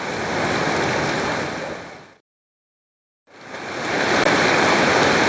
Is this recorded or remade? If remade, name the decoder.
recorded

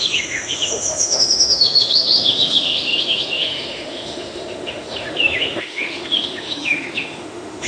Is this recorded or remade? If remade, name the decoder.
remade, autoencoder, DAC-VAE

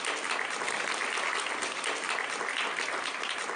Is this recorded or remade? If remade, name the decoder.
recorded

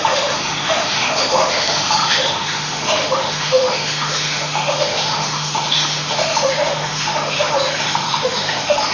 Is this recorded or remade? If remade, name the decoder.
remade, autoencoder, DAC-VAE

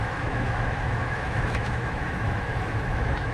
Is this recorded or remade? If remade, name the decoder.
remade, autoencoder, DAC-VAE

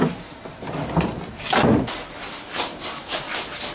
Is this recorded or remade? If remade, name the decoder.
recorded